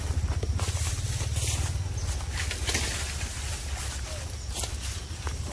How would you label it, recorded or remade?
recorded